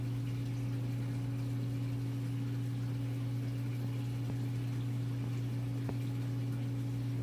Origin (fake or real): real